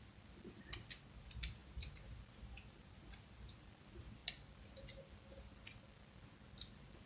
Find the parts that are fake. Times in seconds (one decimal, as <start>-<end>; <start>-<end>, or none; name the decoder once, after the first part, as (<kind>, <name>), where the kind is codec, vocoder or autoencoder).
none